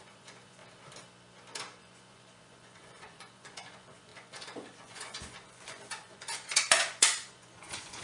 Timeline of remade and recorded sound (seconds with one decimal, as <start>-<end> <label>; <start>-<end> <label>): 0.0-0.6 remade; 0.6-1.8 recorded; 1.8-8.0 remade